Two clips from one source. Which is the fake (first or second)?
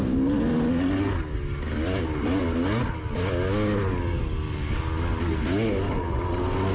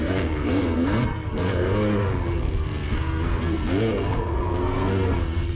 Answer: second